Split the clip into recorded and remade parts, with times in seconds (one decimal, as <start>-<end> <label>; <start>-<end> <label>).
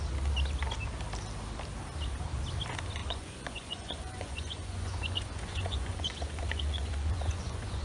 0.0-3.0 recorded; 3.0-7.8 remade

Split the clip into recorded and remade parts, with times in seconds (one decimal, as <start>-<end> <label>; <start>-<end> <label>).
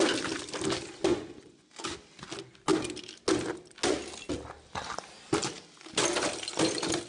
0.0-1.1 recorded; 1.1-1.7 remade; 1.7-7.1 recorded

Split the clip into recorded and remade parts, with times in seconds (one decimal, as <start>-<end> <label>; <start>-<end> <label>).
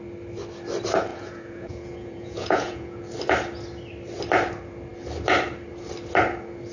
0.0-1.1 recorded; 1.1-3.0 remade; 3.0-6.7 recorded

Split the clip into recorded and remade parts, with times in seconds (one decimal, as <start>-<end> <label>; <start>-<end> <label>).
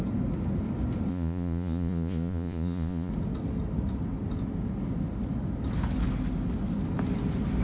0.0-1.1 recorded; 1.1-3.1 remade; 3.1-7.6 recorded